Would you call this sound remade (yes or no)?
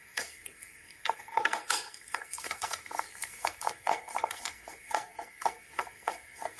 yes